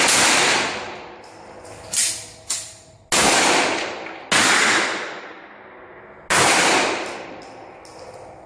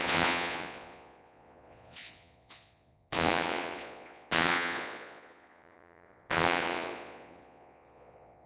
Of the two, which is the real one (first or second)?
first